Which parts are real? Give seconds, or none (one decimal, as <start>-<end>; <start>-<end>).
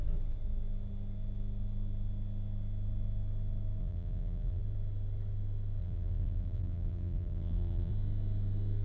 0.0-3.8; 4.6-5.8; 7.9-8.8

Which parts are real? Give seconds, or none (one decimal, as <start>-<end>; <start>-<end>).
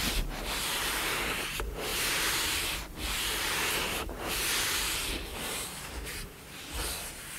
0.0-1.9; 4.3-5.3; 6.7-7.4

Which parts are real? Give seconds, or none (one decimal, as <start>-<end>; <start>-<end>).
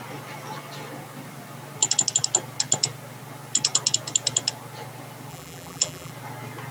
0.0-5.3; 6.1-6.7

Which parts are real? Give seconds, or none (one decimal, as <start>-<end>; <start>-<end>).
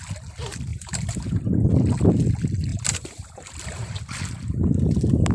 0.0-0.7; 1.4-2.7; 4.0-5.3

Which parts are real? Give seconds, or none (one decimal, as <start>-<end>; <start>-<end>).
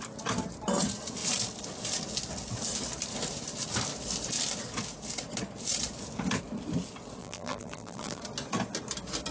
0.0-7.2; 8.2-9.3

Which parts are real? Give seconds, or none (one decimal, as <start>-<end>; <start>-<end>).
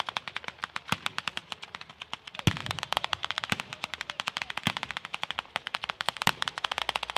0.0-0.6; 1.9-2.6; 6.8-7.2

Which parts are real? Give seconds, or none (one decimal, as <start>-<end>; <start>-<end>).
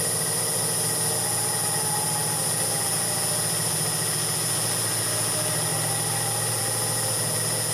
0.0-7.7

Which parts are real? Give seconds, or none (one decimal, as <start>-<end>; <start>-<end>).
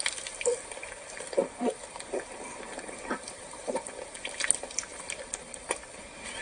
0.0-1.4; 1.9-4.9